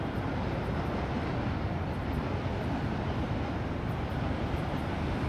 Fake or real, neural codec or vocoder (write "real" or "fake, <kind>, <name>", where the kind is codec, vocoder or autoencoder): real